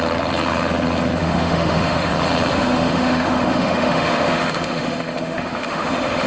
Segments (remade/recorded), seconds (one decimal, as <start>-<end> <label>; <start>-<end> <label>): 0.0-1.2 recorded; 1.2-2.1 remade; 2.1-2.5 recorded; 2.5-6.3 remade